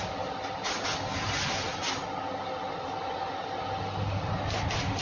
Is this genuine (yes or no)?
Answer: yes